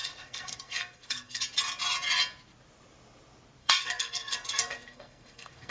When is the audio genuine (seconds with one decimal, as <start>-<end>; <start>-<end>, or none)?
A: 1.4-3.6